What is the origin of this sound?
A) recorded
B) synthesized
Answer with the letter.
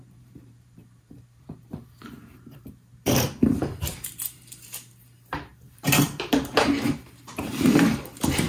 B